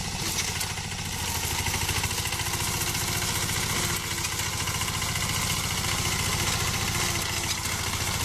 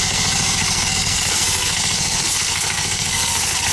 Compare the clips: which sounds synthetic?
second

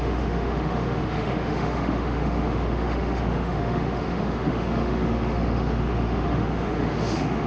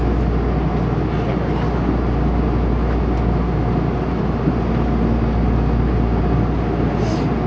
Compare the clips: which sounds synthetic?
first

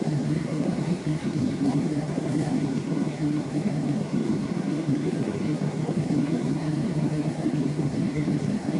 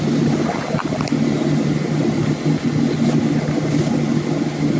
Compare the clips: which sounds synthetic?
first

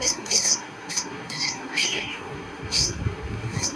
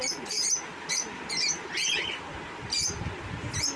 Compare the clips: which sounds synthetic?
first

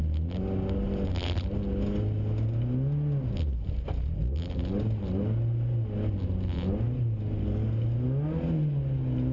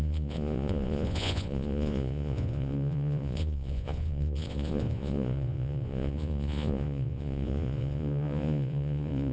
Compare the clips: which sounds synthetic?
second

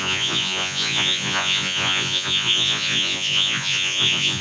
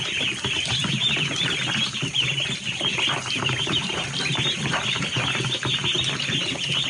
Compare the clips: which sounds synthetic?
first